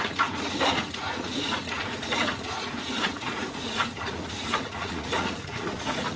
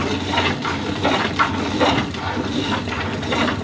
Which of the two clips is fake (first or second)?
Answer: first